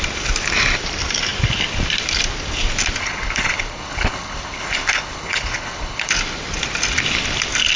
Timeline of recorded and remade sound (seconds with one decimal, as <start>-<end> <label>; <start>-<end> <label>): 0.0-3.0 recorded; 3.0-6.1 remade; 6.1-7.8 recorded

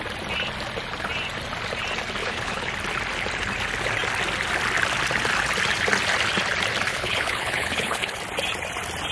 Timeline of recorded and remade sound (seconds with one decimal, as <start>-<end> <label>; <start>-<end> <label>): 0.0-2.2 recorded; 2.2-2.7 remade; 2.7-6.9 recorded; 6.9-8.2 remade; 8.2-9.1 recorded